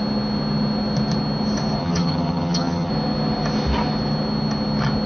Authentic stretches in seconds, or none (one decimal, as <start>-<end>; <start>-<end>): 0.0-1.8; 2.9-5.1